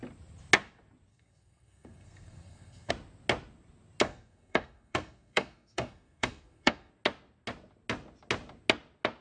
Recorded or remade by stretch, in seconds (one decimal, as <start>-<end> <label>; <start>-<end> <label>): 0.0-1.1 recorded; 1.1-2.9 remade; 2.9-4.1 recorded; 4.1-6.9 remade; 6.9-9.2 recorded